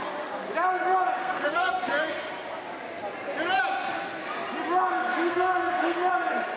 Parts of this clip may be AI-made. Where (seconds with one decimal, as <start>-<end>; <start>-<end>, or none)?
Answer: 1.2-1.8; 5.0-6.1